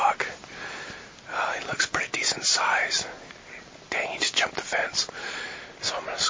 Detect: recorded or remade remade